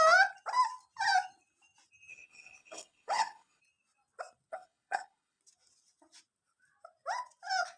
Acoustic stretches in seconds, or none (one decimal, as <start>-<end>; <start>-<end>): 0.0-2.1; 3.6-4.5; 5.4-7.8